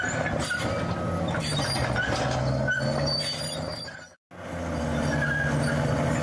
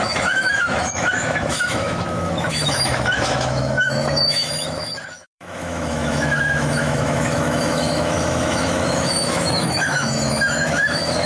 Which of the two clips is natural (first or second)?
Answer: first